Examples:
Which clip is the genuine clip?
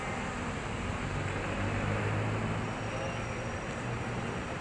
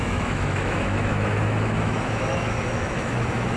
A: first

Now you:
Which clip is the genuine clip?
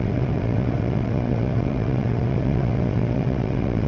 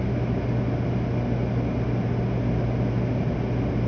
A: second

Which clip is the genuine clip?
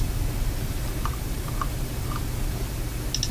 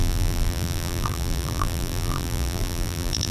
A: first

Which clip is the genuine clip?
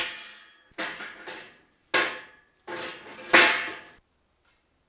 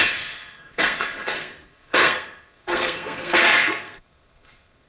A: first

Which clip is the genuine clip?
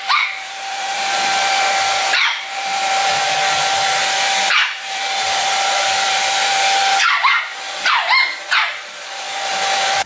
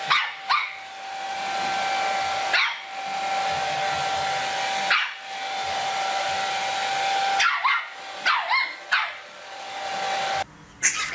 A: second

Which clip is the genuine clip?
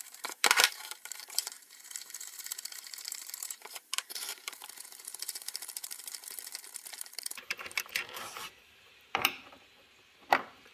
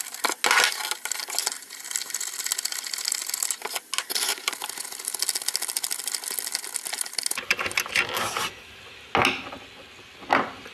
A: second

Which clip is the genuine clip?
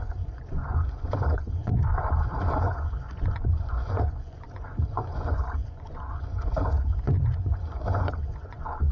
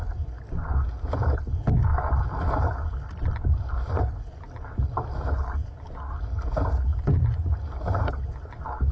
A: second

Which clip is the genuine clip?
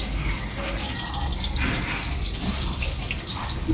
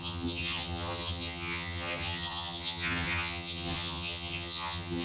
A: first